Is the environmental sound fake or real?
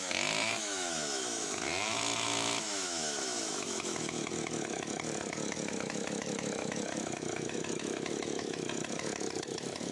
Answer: fake